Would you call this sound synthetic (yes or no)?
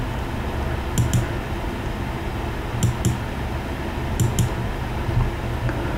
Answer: no